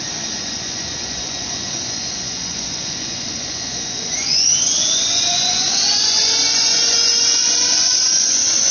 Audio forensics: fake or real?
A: fake